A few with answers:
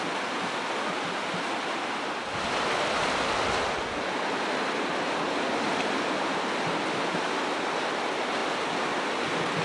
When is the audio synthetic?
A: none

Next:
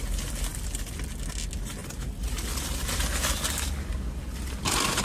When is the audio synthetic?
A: 0.5-1.1 (vocoder, BigVGAN v2)

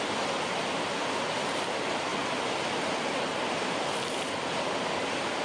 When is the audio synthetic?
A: none

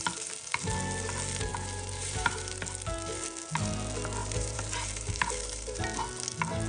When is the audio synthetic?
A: 1.5-2.5 (vocoder, BigVGAN v2); 4.2-5.8

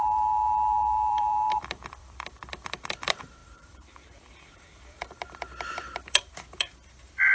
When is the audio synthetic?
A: 0.0-7.3 (vocoder, BigVGAN v2)

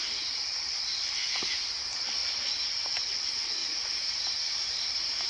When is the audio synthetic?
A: 2.2-3.0 (vocoder, BigVGAN v2); 3.6-5.3

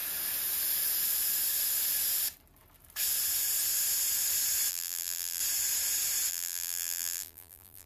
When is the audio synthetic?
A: 4.7-5.4 (vocoder, BigVGAN v2); 6.3-7.9

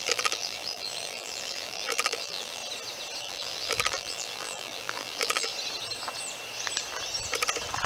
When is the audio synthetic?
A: 0.0-2.6 (vocoder, BigVGAN v2); 3.2-5.5